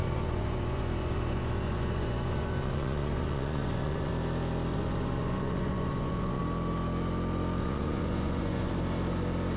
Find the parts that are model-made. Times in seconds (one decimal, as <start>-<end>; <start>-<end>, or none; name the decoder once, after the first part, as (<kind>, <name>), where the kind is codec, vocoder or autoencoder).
0.0-4.1 (vocoder, Vocos); 4.7-6.4; 7.6-8.7